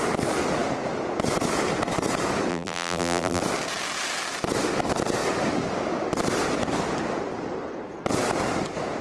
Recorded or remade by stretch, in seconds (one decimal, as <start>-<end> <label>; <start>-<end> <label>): 0.0-2.5 recorded; 2.5-3.4 remade; 3.4-9.0 recorded